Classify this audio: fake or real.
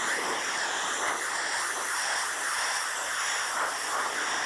real